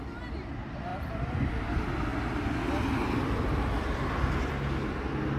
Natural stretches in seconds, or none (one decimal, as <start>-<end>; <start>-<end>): 0.0-5.4